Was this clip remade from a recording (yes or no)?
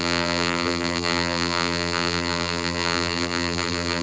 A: yes